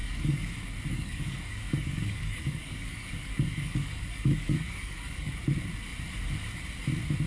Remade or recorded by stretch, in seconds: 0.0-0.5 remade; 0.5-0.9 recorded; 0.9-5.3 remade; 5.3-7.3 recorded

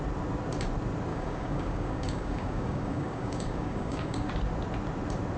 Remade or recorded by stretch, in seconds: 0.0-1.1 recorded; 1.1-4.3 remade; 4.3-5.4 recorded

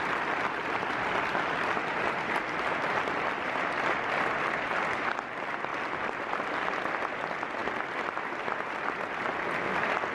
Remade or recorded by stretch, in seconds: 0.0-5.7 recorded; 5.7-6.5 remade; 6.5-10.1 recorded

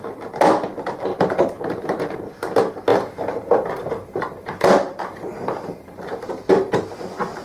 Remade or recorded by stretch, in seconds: 0.0-1.1 recorded; 1.1-2.2 remade; 2.2-2.9 recorded; 2.9-6.3 remade; 6.3-7.4 recorded